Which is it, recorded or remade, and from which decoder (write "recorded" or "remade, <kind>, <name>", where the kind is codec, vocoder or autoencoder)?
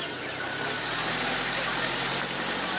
recorded